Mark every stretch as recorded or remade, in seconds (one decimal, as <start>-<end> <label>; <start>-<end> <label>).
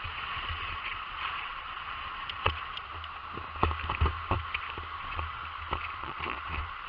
0.0-2.9 remade; 2.9-5.0 recorded; 5.0-5.4 remade; 5.4-6.0 recorded; 6.0-6.9 remade